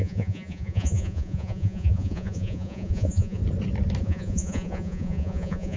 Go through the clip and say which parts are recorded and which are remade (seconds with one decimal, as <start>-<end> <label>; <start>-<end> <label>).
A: 0.0-3.4 remade; 3.4-4.0 recorded; 4.0-5.8 remade